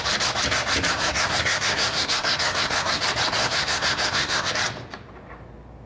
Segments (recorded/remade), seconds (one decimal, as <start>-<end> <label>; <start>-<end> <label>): 0.0-0.9 recorded; 0.9-3.0 remade; 3.0-3.4 recorded; 3.4-4.5 remade; 4.5-5.9 recorded